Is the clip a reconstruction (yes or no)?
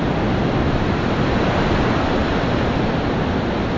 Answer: no